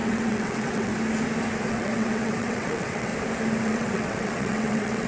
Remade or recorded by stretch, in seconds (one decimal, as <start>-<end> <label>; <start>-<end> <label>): 0.0-0.9 remade; 0.9-1.7 recorded; 1.7-3.1 remade; 3.1-3.6 recorded; 3.6-5.1 remade